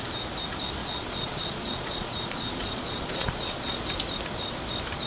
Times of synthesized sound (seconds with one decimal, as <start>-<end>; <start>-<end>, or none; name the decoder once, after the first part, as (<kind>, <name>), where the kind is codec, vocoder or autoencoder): 0.8-3.8 (vocoder, Vocos)